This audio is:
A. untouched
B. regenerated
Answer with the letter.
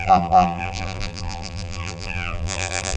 B